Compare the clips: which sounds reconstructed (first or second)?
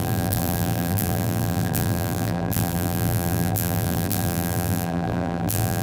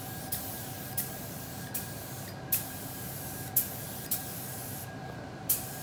first